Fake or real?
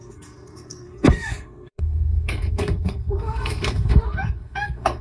fake